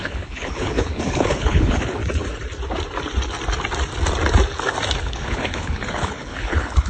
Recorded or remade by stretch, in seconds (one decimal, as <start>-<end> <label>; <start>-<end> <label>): 0.0-2.0 remade; 2.0-5.0 recorded; 5.0-6.9 remade